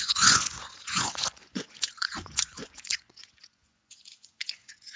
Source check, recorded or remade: remade